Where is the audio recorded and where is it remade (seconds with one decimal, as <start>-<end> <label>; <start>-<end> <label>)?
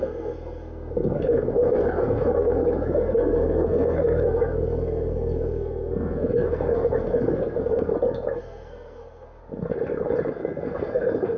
0.0-7.9 remade; 7.9-8.4 recorded; 8.4-9.4 remade; 9.4-10.3 recorded; 10.3-11.4 remade